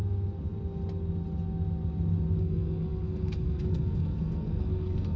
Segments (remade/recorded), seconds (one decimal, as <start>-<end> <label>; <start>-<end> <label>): 0.0-2.4 recorded; 2.4-5.2 remade